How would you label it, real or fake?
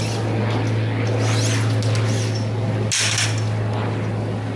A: real